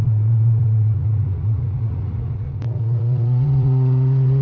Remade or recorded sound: remade